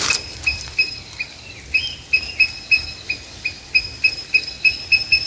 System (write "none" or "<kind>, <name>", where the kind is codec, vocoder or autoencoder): none